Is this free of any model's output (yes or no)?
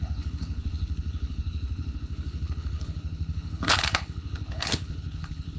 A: no